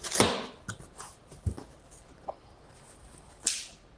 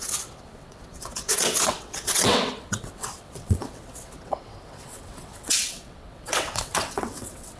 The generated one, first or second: second